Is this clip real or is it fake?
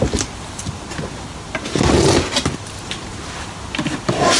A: real